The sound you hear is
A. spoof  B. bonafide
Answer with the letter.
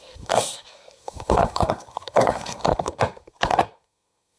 A